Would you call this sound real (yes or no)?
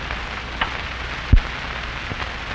yes